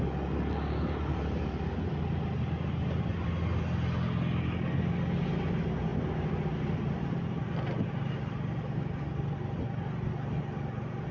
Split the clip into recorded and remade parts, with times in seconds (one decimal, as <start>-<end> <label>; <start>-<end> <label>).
0.0-11.1 recorded